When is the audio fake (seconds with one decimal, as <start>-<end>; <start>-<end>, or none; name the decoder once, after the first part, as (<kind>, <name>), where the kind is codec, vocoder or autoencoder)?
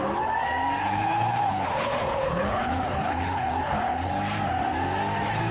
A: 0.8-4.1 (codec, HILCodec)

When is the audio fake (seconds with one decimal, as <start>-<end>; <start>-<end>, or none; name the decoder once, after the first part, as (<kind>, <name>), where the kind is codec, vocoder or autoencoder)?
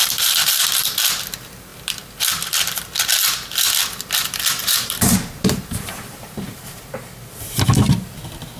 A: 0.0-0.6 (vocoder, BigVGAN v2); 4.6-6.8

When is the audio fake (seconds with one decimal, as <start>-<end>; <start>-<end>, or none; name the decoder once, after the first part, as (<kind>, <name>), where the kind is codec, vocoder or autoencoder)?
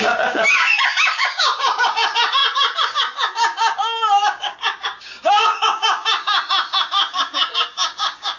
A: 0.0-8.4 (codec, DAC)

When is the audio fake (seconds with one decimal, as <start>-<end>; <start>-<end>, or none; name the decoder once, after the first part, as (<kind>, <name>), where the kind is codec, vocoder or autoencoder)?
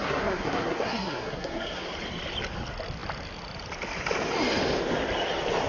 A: 0.0-1.8 (codec, SNAC)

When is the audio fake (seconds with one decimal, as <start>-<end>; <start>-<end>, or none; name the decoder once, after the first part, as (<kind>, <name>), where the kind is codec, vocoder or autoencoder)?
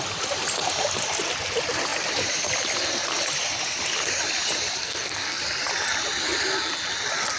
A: 4.8-5.4 (codec, SNAC)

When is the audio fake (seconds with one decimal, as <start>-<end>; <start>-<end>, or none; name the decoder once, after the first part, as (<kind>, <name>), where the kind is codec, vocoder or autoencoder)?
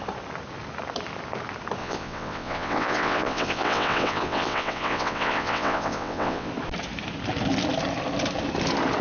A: 1.8-6.5 (vocoder, WaveNeXt)